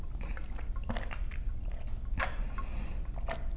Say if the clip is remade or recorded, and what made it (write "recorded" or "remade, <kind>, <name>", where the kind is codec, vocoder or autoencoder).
recorded